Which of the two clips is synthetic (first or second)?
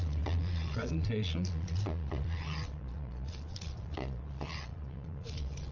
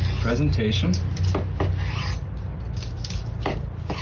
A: first